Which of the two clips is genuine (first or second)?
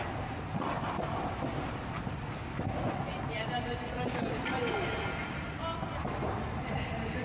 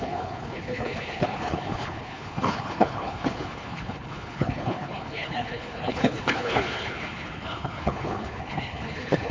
first